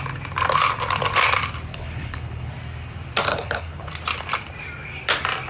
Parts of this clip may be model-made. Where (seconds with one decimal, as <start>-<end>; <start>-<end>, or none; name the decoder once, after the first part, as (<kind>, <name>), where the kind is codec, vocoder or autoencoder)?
1.7-2.5 (codec, HILCodec); 3.3-3.9